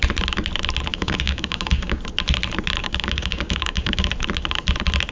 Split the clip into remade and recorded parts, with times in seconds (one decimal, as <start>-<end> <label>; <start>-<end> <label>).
0.0-0.9 recorded; 0.9-2.0 remade; 2.0-2.8 recorded; 2.8-4.1 remade; 4.1-5.1 recorded

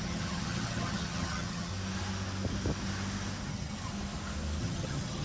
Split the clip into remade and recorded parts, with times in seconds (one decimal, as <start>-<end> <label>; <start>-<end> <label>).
0.0-1.7 remade; 1.7-3.5 recorded; 3.5-3.9 remade; 3.9-4.6 recorded; 4.6-5.2 remade

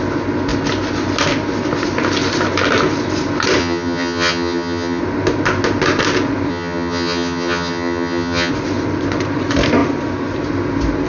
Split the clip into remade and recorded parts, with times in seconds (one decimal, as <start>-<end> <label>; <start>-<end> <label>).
0.0-3.6 recorded; 3.6-5.0 remade; 5.0-6.5 recorded; 6.5-8.5 remade; 8.5-11.1 recorded

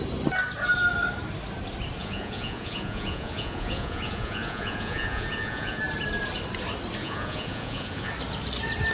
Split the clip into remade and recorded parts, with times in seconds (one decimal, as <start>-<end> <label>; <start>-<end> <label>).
0.0-2.0 recorded; 2.0-5.8 remade; 5.8-7.0 recorded; 7.0-8.1 remade; 8.1-8.9 recorded

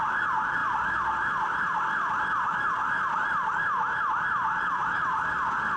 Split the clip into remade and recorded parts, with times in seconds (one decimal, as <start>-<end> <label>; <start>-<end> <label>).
0.0-5.8 recorded

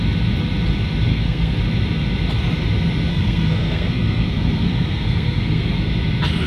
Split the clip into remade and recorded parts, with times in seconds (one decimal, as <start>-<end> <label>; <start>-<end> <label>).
0.0-1.1 recorded; 1.1-1.6 remade; 1.6-3.1 recorded; 3.1-5.9 remade; 5.9-6.5 recorded